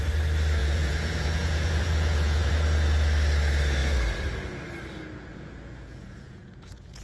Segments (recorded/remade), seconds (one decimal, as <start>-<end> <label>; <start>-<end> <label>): 0.0-0.6 recorded; 0.6-2.5 remade; 2.5-5.3 recorded; 5.3-7.0 remade